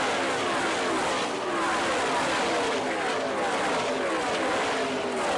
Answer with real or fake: real